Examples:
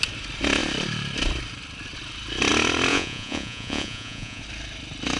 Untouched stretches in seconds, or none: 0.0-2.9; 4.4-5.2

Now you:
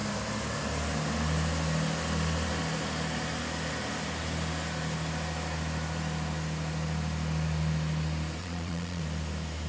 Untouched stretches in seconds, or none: 0.0-8.4; 9.0-9.7

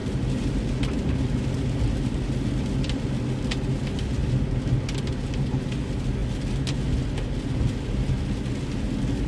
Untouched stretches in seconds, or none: 0.0-9.3

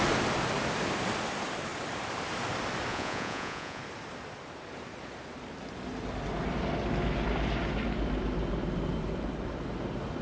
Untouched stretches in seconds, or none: 0.0-2.9; 3.8-10.2

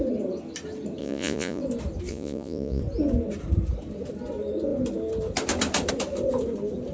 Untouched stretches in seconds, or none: 0.0-1.0; 1.6-2.1; 2.8-6.9

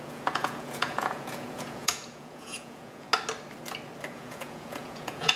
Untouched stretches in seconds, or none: 3.1-4.1